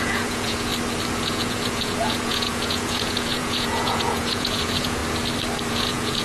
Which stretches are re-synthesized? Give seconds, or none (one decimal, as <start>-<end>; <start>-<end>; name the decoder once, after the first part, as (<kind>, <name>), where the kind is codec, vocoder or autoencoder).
0.0-0.7 (vocoder, Vocos); 1.2-5.0; 5.7-6.2